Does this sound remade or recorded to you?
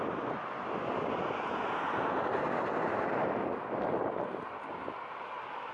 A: recorded